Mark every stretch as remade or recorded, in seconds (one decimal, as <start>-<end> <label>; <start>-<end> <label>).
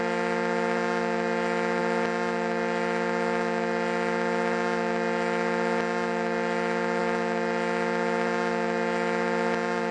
0.0-9.9 recorded